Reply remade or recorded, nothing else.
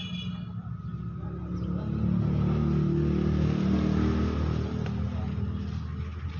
recorded